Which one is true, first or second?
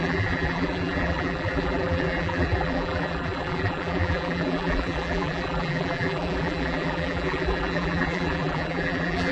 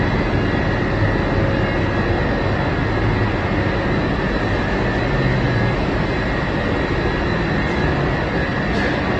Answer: second